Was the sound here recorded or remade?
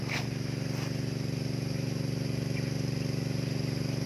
recorded